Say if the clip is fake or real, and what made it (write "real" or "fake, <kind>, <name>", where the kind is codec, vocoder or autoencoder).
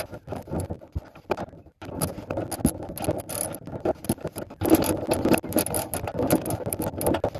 real